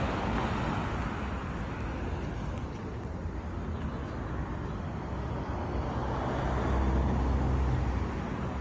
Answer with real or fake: real